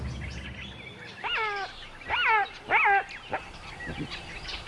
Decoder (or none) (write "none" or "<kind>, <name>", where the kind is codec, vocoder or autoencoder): none